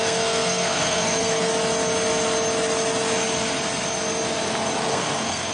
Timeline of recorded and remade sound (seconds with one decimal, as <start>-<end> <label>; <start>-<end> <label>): 0.0-1.5 remade; 1.5-4.8 recorded; 4.8-5.5 remade